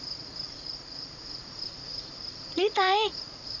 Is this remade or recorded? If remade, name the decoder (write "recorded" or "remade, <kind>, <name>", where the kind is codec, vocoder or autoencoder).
remade, vocoder, Vocos